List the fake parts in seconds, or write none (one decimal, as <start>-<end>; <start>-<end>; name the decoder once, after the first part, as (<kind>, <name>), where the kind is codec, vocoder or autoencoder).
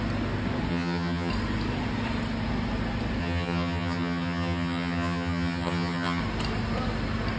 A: 0.7-1.3 (vocoder, HiFi-GAN); 3.2-6.2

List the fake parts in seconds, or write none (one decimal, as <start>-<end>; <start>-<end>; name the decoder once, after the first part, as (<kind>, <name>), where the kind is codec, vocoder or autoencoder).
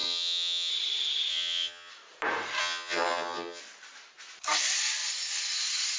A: 0.0-0.7 (vocoder, HiFi-GAN); 1.3-1.9; 2.6-3.6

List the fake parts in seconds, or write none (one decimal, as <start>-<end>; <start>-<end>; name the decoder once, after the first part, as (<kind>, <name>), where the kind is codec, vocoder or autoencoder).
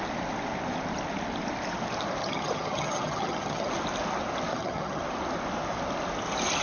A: 2.2-3.7 (vocoder, HiFi-GAN); 4.5-5.0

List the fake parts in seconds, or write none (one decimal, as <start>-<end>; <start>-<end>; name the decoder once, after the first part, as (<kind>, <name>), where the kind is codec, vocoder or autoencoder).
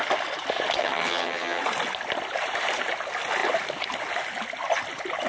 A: 0.8-1.6 (vocoder, HiFi-GAN)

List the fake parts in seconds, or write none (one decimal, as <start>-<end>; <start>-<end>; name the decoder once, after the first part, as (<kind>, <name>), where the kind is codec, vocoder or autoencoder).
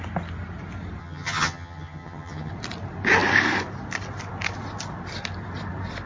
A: 1.0-2.5 (vocoder, HiFi-GAN)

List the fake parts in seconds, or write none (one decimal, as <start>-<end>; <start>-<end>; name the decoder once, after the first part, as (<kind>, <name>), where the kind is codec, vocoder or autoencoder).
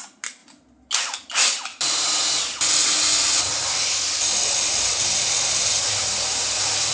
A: none